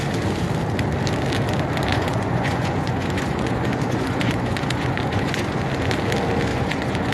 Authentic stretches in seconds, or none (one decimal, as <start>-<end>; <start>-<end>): 0.0-1.9; 5.6-6.5